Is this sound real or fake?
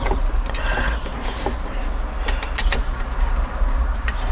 real